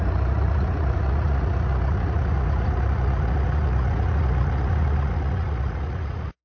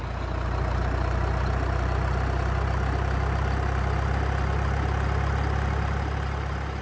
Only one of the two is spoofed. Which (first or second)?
first